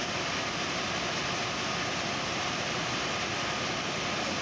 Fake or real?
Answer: real